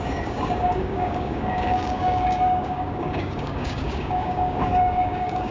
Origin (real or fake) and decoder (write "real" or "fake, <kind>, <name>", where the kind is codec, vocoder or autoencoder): fake, codec, DAC